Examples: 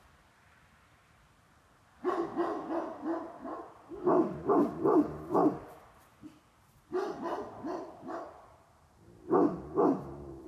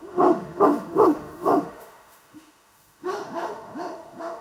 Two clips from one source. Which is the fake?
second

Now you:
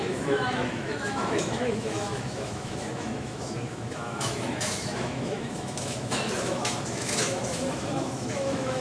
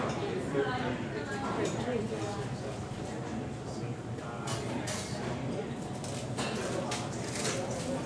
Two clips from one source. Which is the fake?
first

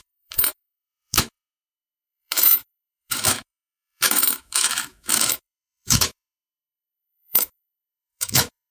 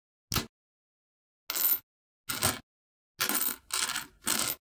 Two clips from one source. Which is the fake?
first